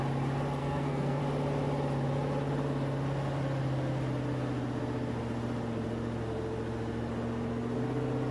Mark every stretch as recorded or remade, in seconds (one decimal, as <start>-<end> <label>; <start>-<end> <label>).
0.0-0.6 recorded; 0.6-1.2 remade; 1.2-8.3 recorded